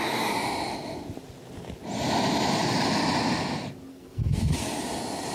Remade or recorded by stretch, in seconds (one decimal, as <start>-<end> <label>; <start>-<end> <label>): 0.0-3.9 recorded; 3.9-4.8 remade; 4.8-5.3 recorded